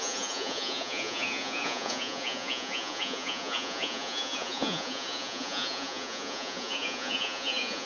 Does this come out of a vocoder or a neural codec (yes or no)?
yes